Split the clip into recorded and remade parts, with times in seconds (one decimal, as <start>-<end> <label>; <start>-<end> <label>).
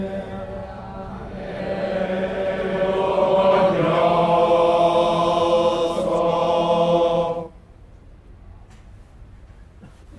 0.0-1.1 recorded; 1.1-1.6 remade; 1.6-10.2 recorded